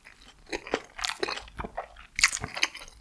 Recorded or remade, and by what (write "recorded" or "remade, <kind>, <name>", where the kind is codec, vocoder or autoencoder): recorded